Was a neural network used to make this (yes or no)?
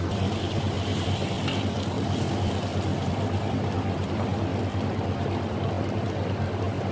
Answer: no